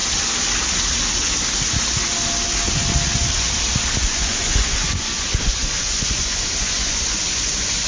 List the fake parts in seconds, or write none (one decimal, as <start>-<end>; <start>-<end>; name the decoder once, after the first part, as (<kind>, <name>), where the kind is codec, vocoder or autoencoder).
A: 4.1-7.9 (vocoder, Vocos)